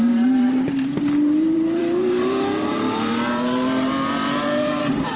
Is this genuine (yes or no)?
no